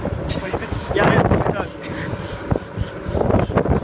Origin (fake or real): real